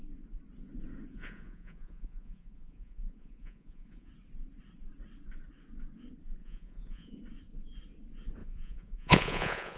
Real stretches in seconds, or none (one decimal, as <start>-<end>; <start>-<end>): 0.0-1.1; 4.1-6.4; 7.2-8.4